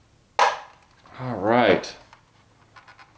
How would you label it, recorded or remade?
recorded